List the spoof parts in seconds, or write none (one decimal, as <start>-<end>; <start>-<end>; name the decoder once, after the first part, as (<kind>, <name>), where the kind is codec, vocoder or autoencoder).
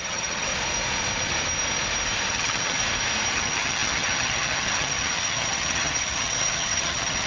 0.0-0.5 (vocoder, HiFi-GAN); 2.3-2.8; 3.3-7.3